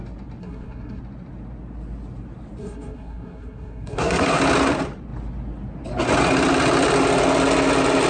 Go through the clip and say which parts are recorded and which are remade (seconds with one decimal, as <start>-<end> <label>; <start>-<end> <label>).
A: 0.0-0.4 recorded; 0.4-1.0 remade; 1.0-2.6 recorded; 2.6-4.4 remade; 4.4-8.1 recorded